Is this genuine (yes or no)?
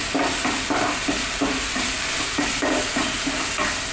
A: yes